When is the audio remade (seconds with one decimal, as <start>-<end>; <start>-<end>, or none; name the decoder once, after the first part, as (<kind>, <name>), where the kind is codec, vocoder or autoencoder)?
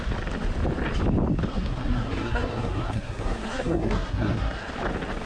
1.5-4.7 (codec, SNAC)